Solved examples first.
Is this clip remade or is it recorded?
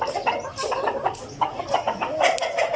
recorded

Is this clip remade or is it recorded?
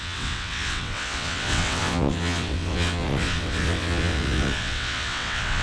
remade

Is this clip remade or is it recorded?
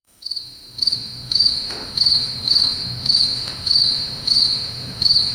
remade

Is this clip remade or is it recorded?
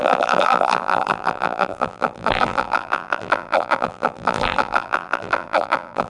remade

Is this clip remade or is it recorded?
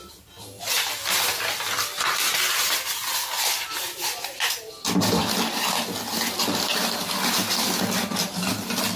recorded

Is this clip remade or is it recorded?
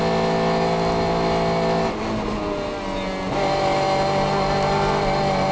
recorded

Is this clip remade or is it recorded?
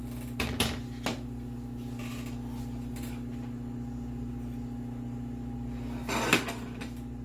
recorded